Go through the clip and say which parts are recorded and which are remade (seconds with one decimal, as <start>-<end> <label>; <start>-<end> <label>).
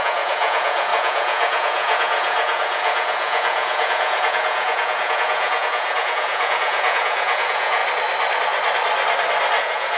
0.0-7.8 remade; 7.8-9.6 recorded; 9.6-10.0 remade